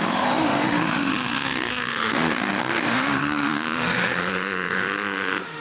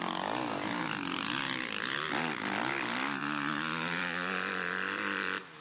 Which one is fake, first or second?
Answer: first